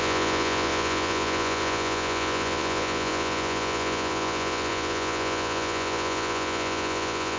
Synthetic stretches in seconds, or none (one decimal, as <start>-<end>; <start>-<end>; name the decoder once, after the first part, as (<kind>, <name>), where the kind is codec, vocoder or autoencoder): 0.0-7.4 (vocoder, Vocos)